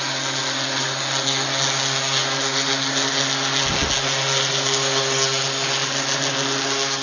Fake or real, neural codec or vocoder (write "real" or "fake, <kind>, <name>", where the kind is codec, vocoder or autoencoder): real